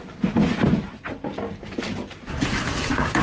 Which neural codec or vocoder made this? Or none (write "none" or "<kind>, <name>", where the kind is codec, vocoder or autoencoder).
none